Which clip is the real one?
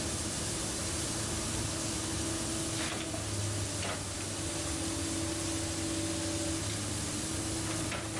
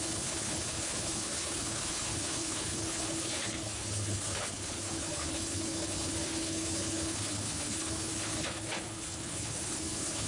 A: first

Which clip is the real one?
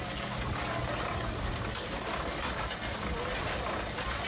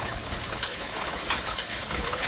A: first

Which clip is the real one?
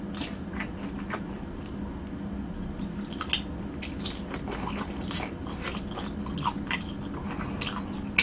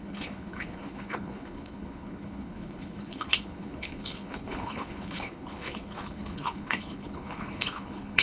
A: first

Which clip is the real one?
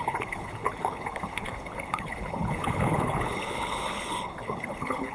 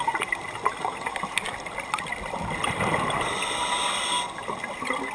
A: second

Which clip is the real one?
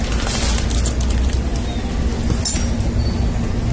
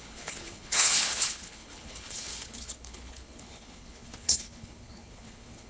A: first